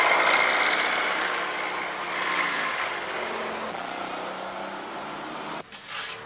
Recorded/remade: recorded